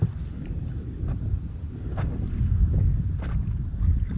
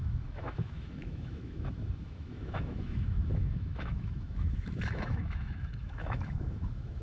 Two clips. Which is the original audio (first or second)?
first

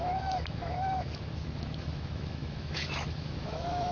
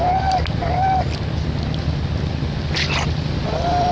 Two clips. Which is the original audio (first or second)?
second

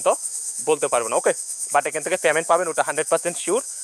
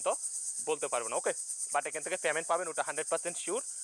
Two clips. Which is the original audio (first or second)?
second